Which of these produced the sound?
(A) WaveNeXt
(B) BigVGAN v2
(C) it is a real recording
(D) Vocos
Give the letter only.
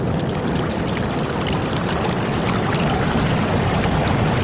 C